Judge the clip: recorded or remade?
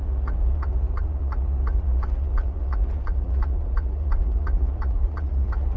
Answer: remade